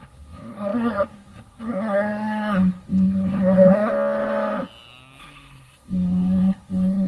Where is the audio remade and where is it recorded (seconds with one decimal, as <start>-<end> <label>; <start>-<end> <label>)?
0.0-3.9 remade; 3.9-5.2 recorded; 5.2-7.1 remade